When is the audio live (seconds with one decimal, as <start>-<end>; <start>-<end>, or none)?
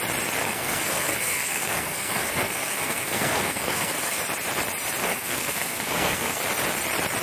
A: 0.0-0.4; 4.2-5.0; 6.4-7.2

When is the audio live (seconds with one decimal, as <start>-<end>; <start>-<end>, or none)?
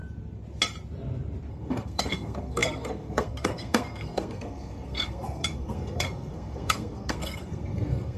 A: 0.0-1.5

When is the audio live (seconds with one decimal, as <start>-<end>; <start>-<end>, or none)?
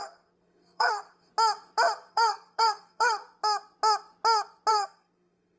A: 1.3-2.1; 3.2-4.7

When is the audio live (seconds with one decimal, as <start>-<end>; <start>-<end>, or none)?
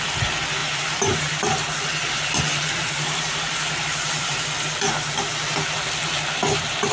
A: 0.0-0.6; 4.7-6.9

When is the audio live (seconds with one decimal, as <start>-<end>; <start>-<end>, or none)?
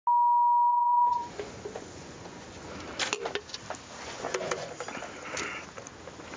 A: 0.0-0.7; 2.7-4.0; 4.7-6.4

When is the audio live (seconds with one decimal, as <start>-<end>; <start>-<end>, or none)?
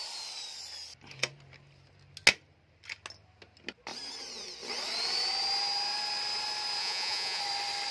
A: 0.0-6.8; 7.4-7.9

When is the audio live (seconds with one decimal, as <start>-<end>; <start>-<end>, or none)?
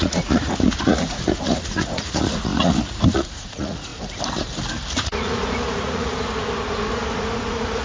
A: 3.9-4.9; 6.1-7.2